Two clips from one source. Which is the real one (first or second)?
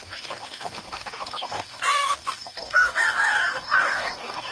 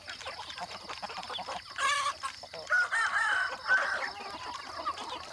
second